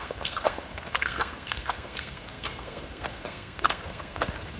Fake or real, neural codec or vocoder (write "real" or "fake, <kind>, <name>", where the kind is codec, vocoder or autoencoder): fake, codec, SNAC